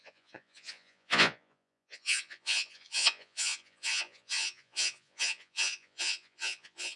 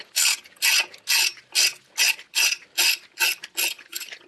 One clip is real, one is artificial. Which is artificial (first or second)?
first